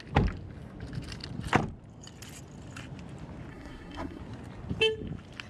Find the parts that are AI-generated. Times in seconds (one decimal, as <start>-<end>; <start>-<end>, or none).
3.5-4.2